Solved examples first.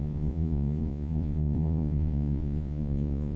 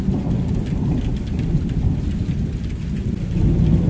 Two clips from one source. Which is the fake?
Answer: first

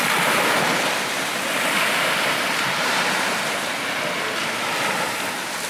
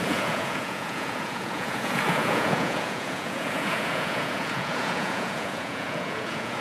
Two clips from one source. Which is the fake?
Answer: second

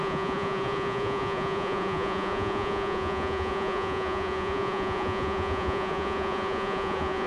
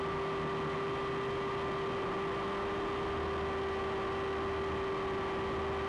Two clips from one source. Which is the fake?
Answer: first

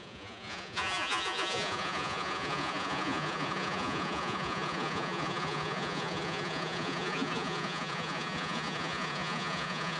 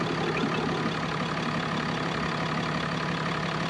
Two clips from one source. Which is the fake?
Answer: first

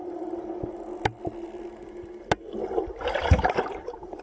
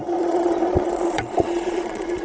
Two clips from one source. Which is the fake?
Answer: second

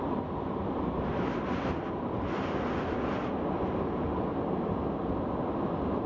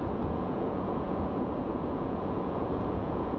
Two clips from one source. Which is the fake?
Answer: second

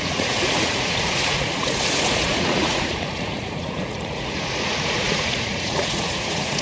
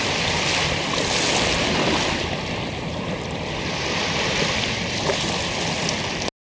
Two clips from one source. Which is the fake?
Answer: first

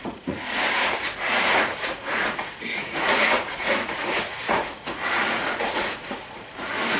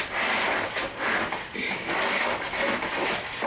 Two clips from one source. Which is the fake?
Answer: first